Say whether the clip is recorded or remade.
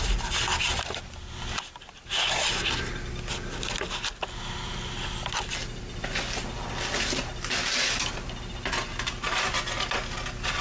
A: recorded